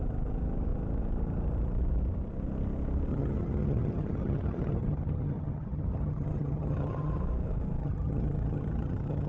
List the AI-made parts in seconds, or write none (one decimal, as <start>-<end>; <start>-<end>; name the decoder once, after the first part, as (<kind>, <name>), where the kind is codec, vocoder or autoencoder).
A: 3.1-7.2 (vocoder, HiFi-GAN); 7.8-9.3